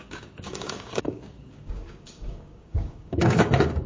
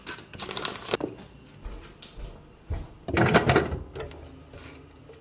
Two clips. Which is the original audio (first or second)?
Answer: second